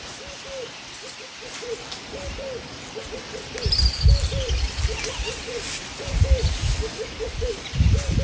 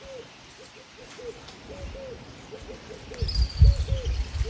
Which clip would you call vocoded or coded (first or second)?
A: first